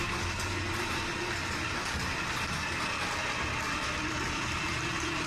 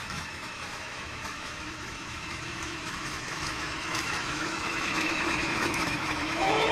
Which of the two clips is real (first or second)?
first